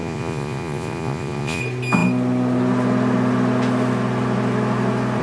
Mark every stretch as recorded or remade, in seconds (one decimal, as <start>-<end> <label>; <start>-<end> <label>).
0.0-1.6 remade; 1.6-5.2 recorded